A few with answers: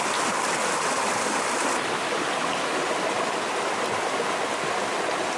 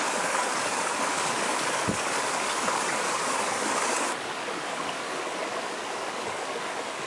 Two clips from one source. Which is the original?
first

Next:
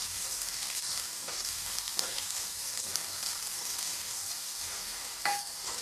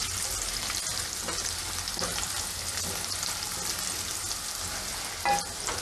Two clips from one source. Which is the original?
second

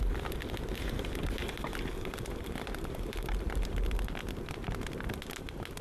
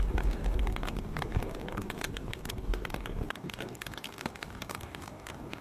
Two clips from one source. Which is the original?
first